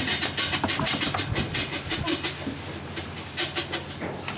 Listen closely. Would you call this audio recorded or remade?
recorded